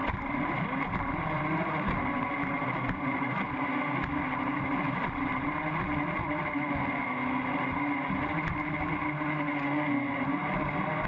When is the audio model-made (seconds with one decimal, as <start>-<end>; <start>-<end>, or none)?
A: none